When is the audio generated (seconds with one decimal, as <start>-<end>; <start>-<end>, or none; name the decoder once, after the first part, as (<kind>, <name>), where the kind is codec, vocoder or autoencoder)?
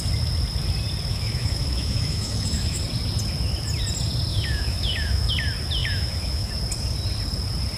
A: 1.1-2.8 (autoencoder, DAC-VAE); 4.3-5.3; 5.8-6.5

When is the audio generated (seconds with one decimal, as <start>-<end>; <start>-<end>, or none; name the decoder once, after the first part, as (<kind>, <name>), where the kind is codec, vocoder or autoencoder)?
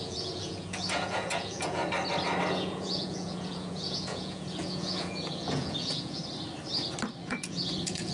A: 0.0-1.8 (vocoder, Vocos); 2.5-6.2; 7.3-8.1